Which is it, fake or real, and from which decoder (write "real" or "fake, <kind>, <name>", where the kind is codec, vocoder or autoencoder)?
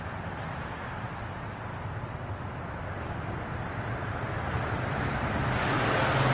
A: real